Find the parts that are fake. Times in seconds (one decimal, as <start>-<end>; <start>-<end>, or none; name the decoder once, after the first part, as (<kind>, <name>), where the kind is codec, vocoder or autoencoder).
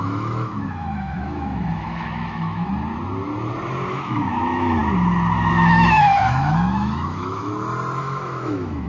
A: 0.0-2.7 (autoencoder, DAC-VAE); 3.9-4.8; 5.5-7.5; 8.0-8.9